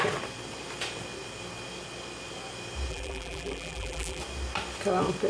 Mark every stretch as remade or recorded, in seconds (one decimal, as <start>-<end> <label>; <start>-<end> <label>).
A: 0.0-2.9 recorded; 2.9-4.2 remade; 4.2-5.3 recorded

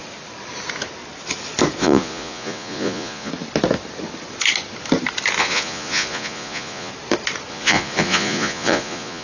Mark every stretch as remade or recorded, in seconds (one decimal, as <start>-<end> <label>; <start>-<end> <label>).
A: 0.0-1.8 recorded; 1.8-3.3 remade; 3.3-5.4 recorded; 5.4-6.9 remade; 6.9-7.5 recorded; 7.5-9.2 remade